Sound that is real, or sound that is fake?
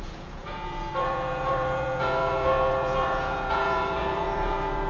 fake